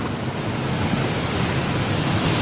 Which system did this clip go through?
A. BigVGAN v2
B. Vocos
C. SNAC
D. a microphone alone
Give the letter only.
D